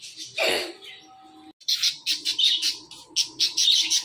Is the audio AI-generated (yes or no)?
no